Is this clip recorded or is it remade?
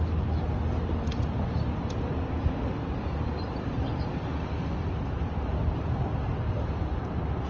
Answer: recorded